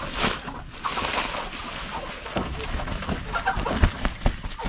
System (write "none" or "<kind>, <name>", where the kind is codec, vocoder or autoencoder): none